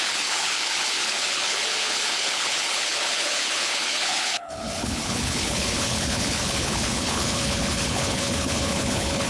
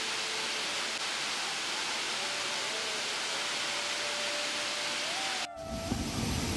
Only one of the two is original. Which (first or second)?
second